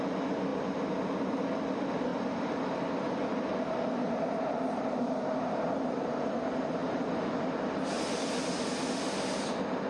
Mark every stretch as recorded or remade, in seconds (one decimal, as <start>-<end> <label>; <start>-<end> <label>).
0.0-9.9 recorded